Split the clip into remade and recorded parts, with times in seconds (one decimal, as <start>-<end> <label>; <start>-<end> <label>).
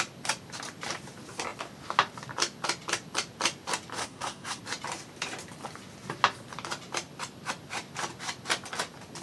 0.0-4.0 recorded; 4.0-4.6 remade; 4.6-9.2 recorded